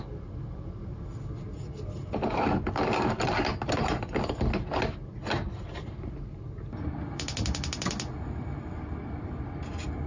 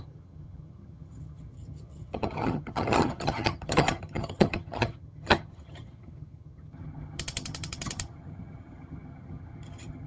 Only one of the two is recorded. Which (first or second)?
first